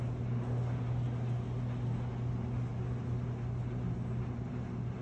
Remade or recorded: recorded